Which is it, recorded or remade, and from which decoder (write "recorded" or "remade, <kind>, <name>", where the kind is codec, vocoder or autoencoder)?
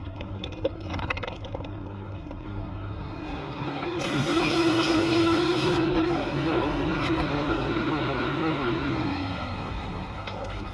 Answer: remade, codec, SNAC